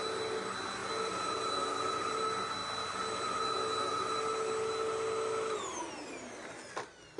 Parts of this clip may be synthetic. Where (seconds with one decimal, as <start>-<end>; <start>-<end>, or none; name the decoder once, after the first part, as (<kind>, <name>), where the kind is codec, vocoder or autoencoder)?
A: none